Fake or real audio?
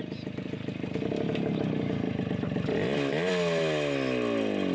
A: real